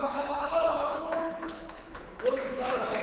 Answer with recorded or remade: remade